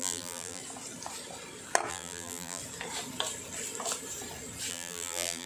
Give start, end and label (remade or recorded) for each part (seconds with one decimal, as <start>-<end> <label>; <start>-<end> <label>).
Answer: 0.0-0.6 remade; 0.6-1.9 recorded; 1.9-2.6 remade; 2.6-4.7 recorded; 4.7-5.5 remade